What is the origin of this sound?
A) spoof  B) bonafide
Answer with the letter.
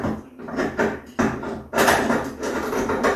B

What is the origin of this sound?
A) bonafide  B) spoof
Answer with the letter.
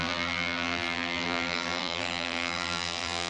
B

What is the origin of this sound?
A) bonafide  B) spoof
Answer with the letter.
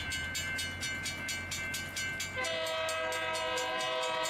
A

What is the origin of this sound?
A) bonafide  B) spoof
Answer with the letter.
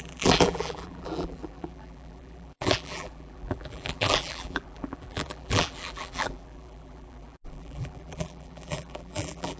B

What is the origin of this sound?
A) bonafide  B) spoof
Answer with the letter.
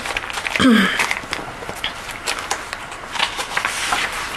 A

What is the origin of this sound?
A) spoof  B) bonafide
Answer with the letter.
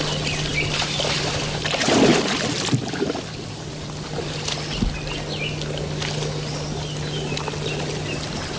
B